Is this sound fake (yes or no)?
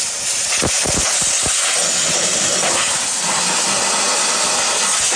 no